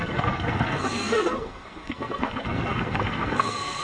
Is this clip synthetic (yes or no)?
yes